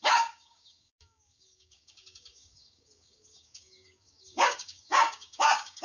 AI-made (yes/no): yes